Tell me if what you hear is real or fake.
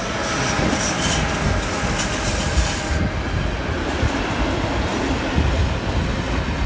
real